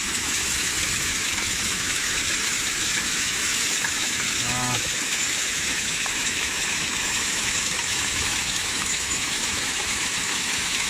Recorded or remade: remade